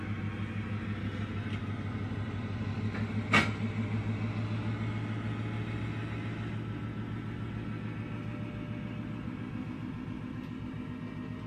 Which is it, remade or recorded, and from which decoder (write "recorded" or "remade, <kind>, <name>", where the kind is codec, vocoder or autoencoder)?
recorded